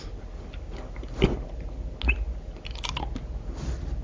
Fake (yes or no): no